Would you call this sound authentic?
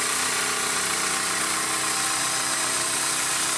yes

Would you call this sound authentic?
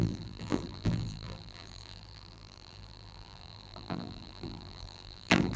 no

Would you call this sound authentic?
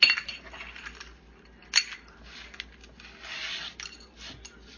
yes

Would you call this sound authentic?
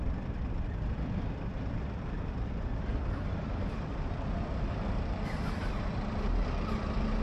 no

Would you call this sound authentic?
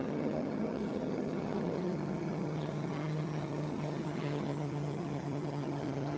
no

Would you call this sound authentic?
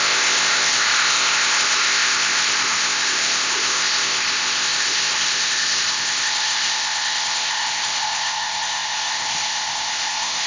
no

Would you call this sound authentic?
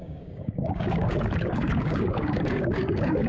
no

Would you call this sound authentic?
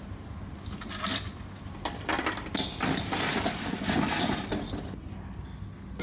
yes